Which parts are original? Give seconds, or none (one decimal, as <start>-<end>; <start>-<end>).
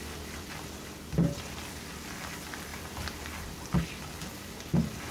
0.0-5.1